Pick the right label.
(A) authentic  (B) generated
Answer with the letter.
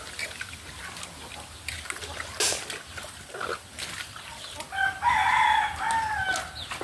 A